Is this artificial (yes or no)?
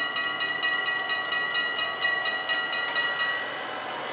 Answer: no